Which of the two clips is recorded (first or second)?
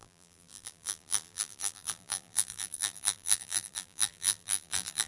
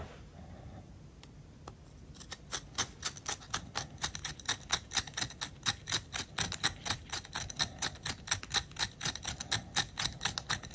second